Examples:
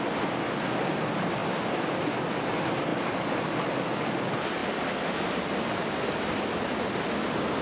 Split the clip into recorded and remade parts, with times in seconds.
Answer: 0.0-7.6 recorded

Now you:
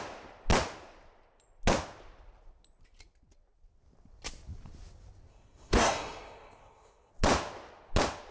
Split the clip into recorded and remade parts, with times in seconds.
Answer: 0.0-5.3 recorded; 5.3-7.1 remade; 7.1-8.3 recorded

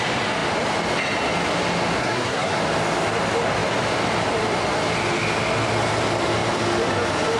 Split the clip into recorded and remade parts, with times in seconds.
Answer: 0.0-2.0 recorded; 2.0-2.6 remade; 2.6-7.4 recorded

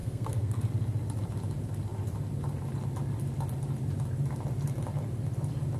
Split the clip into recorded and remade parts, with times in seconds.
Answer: 0.0-0.7 remade; 0.7-5.8 recorded

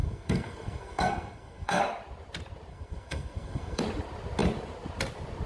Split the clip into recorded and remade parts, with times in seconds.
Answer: 0.0-1.8 remade; 1.8-2.7 recorded; 2.7-3.8 remade; 3.8-5.5 recorded